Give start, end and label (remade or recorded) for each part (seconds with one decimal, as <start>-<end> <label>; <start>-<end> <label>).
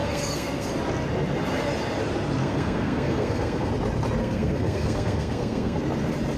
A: 0.0-0.7 remade; 0.7-2.4 recorded; 2.4-3.7 remade; 3.7-4.2 recorded; 4.2-5.8 remade; 5.8-6.4 recorded